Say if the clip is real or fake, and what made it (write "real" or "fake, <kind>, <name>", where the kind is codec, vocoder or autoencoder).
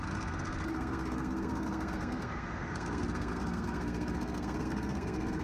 fake, codec, SNAC